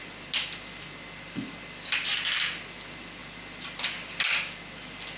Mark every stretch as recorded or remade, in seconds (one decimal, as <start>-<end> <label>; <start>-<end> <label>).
0.0-5.2 recorded